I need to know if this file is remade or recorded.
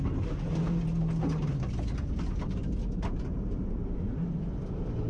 recorded